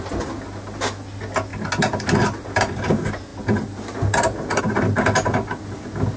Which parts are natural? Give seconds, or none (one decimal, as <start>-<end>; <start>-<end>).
0.0-6.2